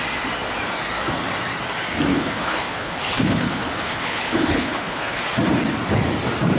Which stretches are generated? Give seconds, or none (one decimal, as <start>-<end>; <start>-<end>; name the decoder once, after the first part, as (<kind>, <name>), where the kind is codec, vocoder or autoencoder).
2.1-5.2 (codec, HILCodec)